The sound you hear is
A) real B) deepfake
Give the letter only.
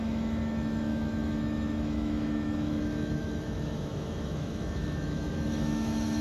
B